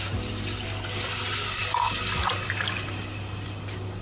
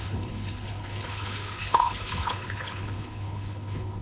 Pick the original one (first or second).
first